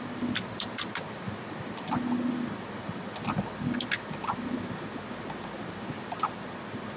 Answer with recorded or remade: recorded